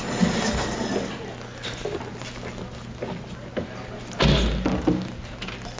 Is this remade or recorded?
recorded